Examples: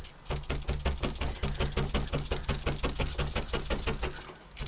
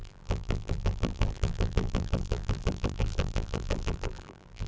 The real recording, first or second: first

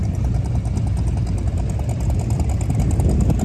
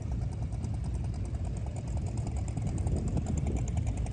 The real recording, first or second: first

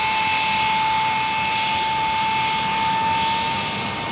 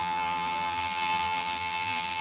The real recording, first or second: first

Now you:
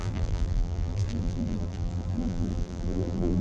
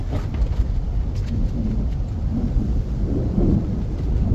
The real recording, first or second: second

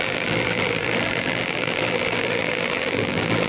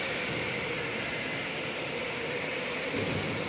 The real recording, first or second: second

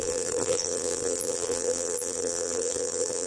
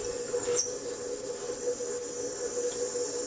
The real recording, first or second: second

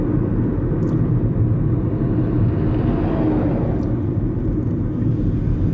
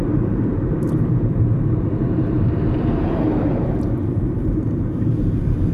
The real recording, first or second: first